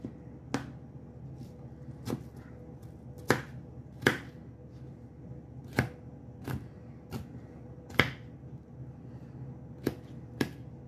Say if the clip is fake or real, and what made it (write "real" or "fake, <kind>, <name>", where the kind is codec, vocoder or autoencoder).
real